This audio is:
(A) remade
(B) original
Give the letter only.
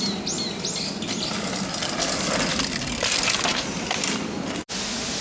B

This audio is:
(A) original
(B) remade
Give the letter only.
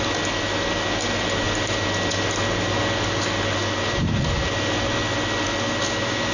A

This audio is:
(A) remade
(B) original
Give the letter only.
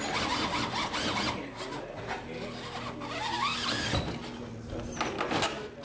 B